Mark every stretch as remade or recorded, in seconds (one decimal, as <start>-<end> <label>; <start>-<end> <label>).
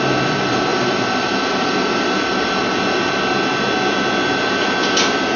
0.0-0.7 recorded; 0.7-2.6 remade; 2.6-5.4 recorded